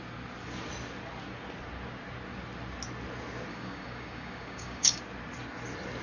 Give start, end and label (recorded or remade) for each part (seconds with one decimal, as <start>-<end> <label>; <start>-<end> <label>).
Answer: 0.0-3.5 recorded; 3.5-5.0 remade; 5.0-6.0 recorded